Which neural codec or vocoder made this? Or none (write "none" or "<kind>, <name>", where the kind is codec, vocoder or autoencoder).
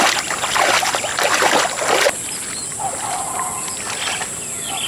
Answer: none